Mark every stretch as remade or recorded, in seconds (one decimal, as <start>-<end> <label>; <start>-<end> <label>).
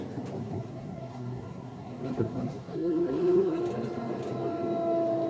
0.0-0.4 recorded; 0.4-3.6 remade; 3.6-5.3 recorded